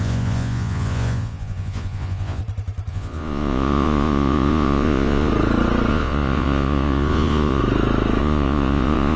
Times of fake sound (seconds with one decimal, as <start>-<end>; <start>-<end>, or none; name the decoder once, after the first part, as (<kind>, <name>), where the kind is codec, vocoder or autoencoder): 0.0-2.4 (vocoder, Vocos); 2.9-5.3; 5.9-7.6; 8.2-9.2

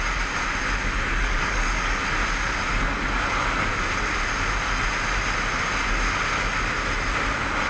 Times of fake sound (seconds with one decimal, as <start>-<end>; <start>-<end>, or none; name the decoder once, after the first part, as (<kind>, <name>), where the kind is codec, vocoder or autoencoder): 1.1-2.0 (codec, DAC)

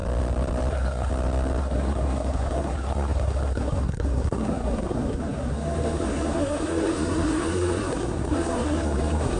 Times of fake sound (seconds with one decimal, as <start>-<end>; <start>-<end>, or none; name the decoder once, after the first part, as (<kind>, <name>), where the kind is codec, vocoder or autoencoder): 0.7-1.1 (codec, SNAC); 1.6-9.4

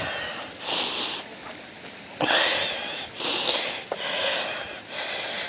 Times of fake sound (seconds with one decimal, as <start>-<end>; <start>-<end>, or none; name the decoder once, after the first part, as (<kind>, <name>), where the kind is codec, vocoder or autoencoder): none

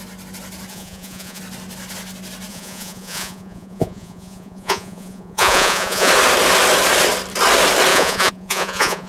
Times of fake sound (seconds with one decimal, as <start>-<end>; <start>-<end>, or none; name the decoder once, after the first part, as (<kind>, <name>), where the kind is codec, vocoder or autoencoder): 0.7-1.4 (vocoder, Vocos); 2.5-6.1; 7.9-9.1